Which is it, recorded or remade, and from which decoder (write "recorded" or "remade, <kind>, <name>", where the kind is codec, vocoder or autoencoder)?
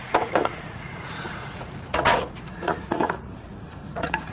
remade, vocoder, Vocos